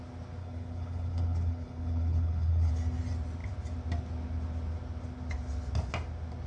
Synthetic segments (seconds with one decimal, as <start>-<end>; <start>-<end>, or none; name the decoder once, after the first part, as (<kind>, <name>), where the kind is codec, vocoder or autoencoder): 0.4-2.7 (codec, HILCodec)